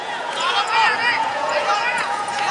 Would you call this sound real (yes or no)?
no